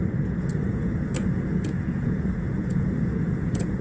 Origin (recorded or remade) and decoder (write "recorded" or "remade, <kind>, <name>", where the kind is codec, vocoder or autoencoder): remade, vocoder, Vocos